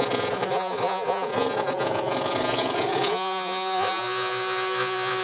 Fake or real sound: fake